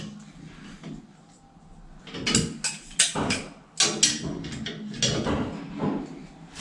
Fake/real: real